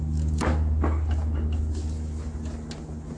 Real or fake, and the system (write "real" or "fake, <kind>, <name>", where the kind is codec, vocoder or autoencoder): real